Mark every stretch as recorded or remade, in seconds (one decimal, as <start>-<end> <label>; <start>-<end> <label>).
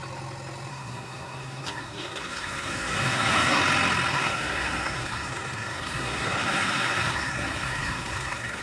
0.0-0.7 recorded; 0.7-3.6 remade; 3.6-4.1 recorded; 4.1-8.6 remade